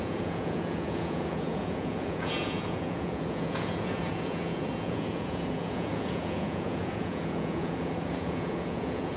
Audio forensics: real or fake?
fake